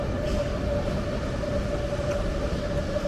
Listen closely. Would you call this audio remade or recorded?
recorded